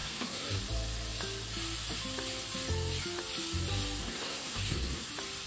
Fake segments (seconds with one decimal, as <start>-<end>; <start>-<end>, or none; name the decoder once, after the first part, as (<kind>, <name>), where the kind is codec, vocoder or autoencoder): 0.0-0.6 (codec, SNAC); 4.0-5.1

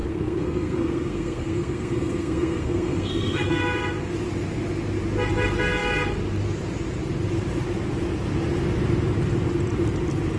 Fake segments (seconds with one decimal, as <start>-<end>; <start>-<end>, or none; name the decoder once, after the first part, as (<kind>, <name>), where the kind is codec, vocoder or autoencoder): 0.0-3.6 (codec, SNAC)

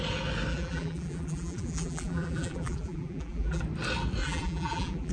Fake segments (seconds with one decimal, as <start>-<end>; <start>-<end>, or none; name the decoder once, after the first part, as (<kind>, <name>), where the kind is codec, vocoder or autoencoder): 0.5-3.6 (vocoder, BigVGAN v2); 4.2-5.1

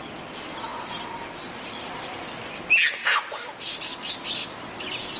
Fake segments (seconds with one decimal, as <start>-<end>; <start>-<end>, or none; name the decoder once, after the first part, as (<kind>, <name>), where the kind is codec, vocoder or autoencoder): 0.7-2.6 (vocoder, BigVGAN v2); 3.0-3.8

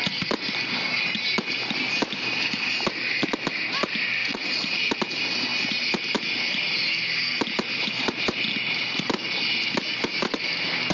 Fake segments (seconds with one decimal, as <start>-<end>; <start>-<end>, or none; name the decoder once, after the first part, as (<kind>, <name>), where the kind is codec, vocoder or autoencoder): 4.2-4.8 (vocoder, Vocos)